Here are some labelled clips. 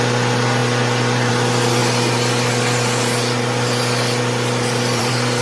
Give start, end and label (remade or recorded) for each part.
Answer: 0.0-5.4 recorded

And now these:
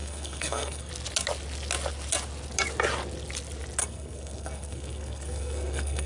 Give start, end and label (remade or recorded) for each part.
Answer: 0.0-0.9 remade; 0.9-3.8 recorded; 3.8-6.1 remade

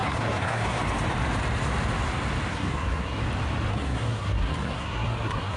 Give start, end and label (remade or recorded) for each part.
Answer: 0.0-0.8 remade; 0.8-2.5 recorded; 2.5-3.2 remade; 3.2-3.7 recorded; 3.7-5.6 remade

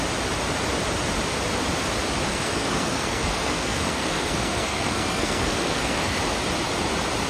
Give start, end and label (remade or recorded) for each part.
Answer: 0.0-2.3 recorded; 2.3-6.2 remade; 6.2-7.3 recorded

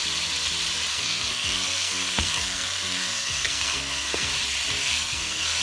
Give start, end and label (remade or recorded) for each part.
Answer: 0.0-0.9 recorded; 0.9-4.3 remade; 4.3-4.8 recorded; 4.8-5.6 remade